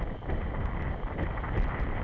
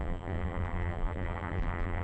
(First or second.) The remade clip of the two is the second